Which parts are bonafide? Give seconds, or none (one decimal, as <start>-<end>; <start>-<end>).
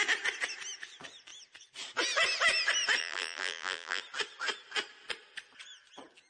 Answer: 0.0-3.0; 4.0-6.3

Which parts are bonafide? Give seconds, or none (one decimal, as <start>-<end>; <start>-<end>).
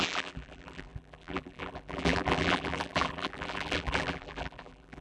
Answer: none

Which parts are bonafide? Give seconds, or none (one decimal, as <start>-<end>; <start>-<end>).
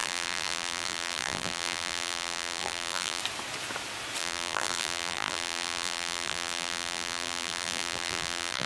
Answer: 3.2-4.2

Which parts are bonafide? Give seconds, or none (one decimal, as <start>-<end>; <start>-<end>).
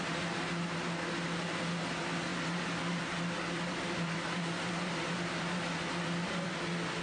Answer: 0.0-2.3; 6.5-7.0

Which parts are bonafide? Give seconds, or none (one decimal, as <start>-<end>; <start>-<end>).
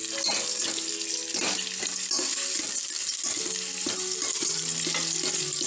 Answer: 0.0-5.7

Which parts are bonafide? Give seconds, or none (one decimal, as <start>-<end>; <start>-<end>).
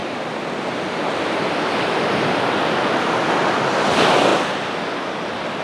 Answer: 0.0-5.6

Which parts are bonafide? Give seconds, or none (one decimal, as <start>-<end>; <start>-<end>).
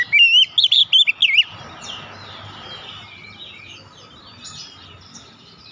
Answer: 0.0-5.7